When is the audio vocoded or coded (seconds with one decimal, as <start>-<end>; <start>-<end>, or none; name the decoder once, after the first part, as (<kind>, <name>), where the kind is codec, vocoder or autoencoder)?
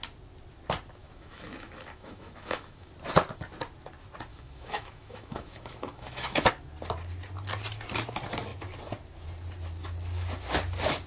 1.0-2.9 (autoencoder, DAC-VAE); 4.3-6.5